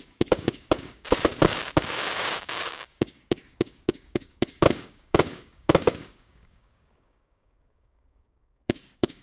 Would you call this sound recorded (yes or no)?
no